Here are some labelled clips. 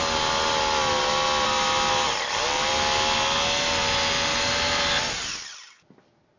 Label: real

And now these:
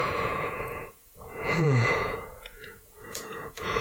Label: fake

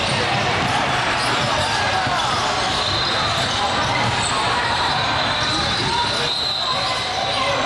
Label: fake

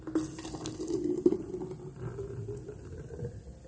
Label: real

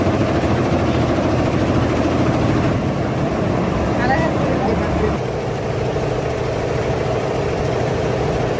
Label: fake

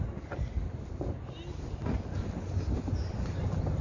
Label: real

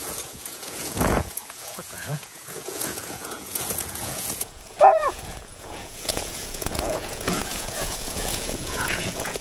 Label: fake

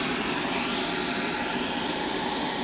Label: real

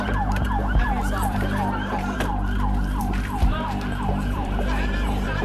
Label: fake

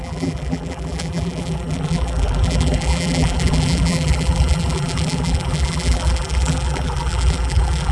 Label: fake